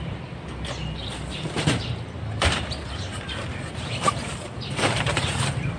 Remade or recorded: remade